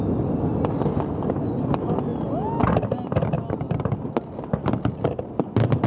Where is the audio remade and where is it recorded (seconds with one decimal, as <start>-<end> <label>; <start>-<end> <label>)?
0.0-5.9 recorded